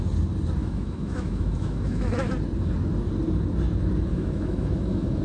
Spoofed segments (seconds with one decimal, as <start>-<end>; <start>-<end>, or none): 0.6-2.3; 4.1-5.2